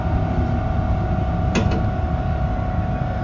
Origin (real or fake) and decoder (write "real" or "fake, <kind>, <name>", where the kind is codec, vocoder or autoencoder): real